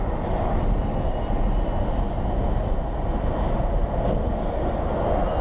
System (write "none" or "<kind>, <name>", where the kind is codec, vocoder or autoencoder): none